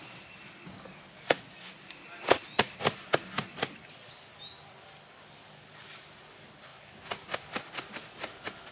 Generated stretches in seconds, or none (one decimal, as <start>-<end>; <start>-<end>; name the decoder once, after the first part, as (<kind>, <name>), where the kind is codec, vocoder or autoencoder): none